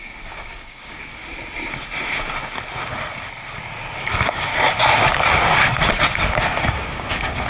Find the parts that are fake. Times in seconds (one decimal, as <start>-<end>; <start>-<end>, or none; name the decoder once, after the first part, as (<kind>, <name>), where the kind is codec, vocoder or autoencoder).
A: 0.0-1.2 (codec, DAC); 4.0-4.5; 6.0-7.5

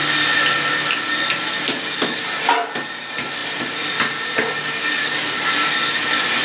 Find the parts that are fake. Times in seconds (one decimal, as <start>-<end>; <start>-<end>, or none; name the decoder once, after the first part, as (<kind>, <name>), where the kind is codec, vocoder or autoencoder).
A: none

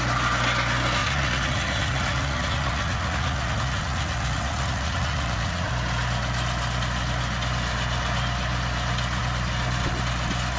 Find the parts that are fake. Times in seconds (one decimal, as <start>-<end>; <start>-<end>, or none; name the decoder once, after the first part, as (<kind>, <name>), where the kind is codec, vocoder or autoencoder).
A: 1.0-5.7 (vocoder, Vocos)